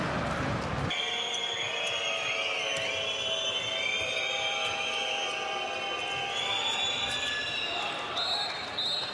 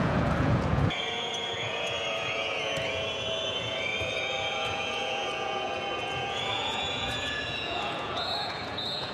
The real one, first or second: first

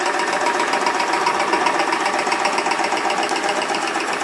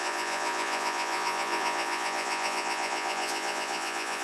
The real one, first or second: first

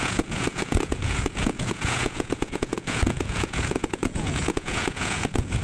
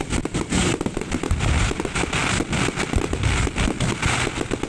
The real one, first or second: second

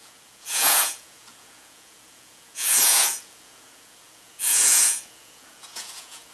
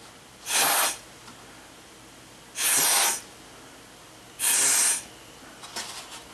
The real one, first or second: second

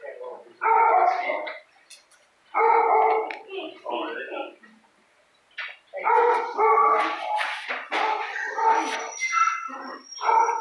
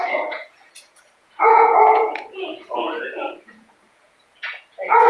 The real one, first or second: first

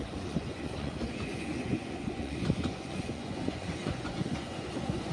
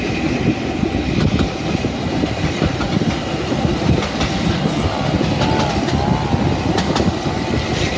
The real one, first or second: second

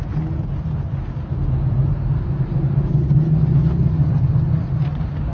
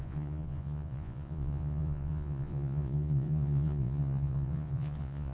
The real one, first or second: first